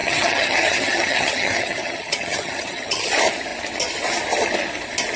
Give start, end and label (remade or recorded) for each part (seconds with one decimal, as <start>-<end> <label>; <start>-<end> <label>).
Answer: 0.0-3.1 remade; 3.1-5.2 recorded